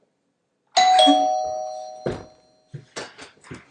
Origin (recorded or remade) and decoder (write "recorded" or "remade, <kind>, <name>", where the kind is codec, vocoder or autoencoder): recorded